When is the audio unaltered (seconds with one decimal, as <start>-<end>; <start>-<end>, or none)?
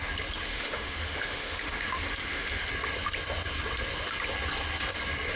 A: 0.0-0.5; 2.7-5.4